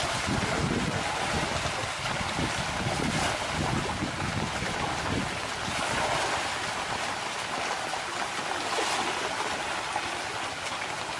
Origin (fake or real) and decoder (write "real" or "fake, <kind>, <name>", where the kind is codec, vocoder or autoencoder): real